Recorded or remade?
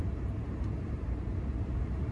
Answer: remade